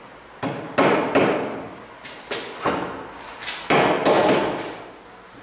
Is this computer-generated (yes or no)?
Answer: no